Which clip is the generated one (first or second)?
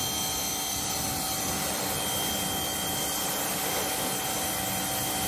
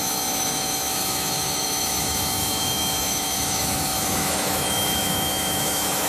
second